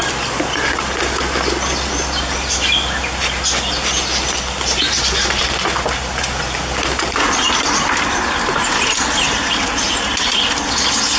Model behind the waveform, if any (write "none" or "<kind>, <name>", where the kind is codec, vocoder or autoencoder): none